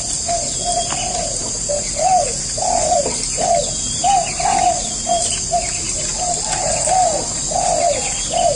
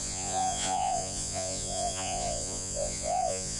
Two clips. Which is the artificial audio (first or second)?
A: second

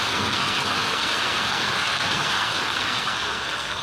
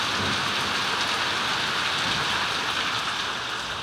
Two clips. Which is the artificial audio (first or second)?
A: first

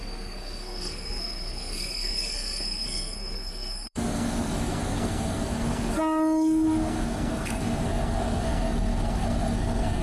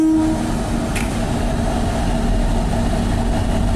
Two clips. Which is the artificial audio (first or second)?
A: first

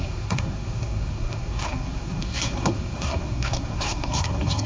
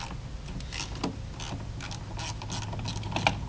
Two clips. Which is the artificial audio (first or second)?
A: first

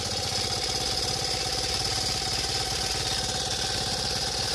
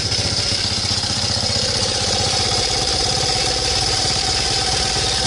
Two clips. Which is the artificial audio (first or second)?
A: second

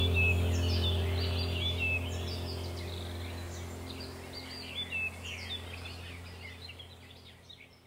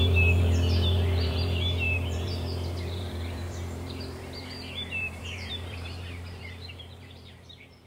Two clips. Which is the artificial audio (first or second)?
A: second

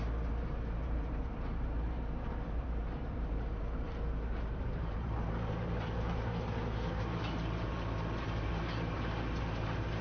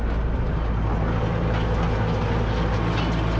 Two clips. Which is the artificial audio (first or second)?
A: first